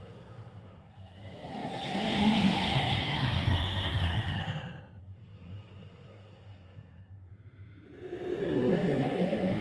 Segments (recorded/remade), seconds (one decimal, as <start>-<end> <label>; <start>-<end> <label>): 0.0-4.4 remade; 4.4-5.0 recorded; 5.0-7.3 remade; 7.3-8.4 recorded; 8.4-9.6 remade